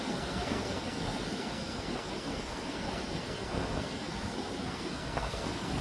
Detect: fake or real fake